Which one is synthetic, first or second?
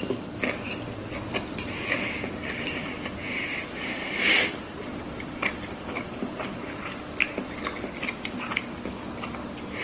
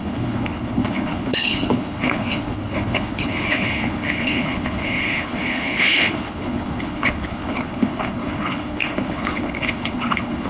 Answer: second